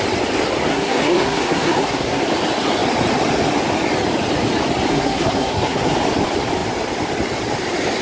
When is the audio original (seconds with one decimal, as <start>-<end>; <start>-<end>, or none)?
0.0-0.7; 2.2-4.9; 5.9-8.0